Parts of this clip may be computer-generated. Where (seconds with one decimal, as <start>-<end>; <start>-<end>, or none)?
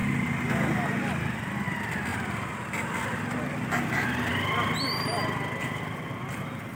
none